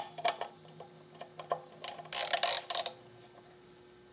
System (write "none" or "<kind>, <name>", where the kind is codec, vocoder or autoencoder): none